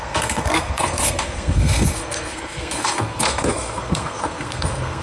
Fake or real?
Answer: fake